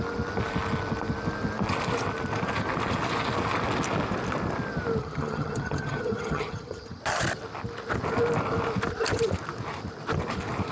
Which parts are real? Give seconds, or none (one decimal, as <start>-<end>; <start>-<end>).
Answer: 0.0-5.0; 7.0-10.7